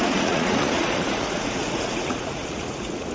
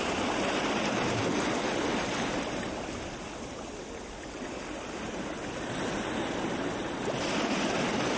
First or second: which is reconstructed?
first